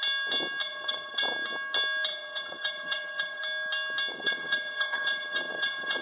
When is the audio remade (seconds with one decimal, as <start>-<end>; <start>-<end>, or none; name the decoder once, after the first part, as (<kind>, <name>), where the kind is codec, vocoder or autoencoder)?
0.6-1.2 (vocoder, WaveNeXt); 2.1-3.4; 4.1-6.0